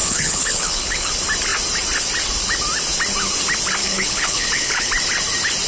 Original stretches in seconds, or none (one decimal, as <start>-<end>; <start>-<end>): 1.1-3.8; 4.9-5.7